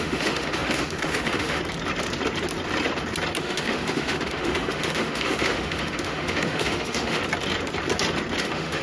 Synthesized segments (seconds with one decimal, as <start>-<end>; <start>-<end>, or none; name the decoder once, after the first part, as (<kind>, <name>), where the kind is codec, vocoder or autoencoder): 0.0-1.6 (autoencoder, DAC-VAE); 3.4-7.2; 8.4-8.8